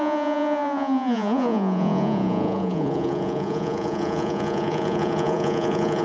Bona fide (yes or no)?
no